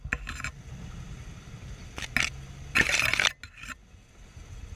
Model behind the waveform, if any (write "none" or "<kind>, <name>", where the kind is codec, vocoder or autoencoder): none